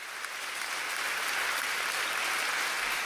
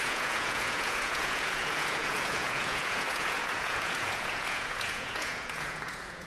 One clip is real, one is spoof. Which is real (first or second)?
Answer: first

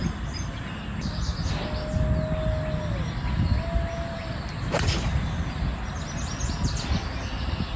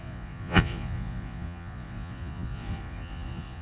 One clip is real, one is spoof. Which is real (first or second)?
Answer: first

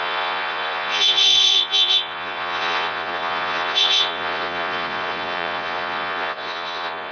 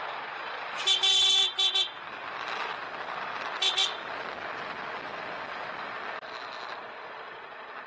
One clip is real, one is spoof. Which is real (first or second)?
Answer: second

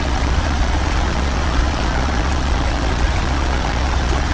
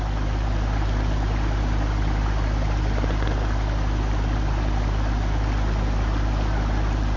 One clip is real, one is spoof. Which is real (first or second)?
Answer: second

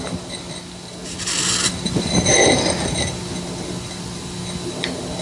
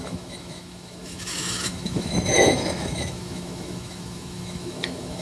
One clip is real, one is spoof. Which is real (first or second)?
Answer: first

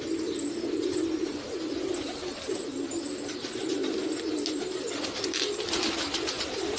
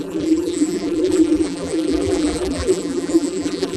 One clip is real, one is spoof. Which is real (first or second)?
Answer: first